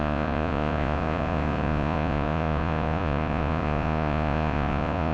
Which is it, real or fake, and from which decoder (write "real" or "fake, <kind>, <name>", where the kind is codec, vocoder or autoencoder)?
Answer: fake, vocoder, Vocos